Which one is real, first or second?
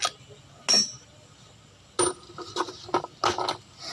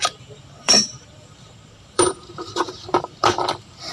first